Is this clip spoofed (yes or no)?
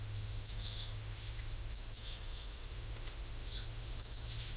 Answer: yes